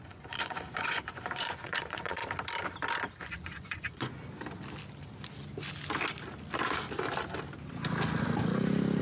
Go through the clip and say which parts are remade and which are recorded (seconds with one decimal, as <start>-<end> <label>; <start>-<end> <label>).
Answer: 0.0-2.2 remade; 2.2-3.2 recorded; 3.2-4.2 remade; 4.2-9.0 recorded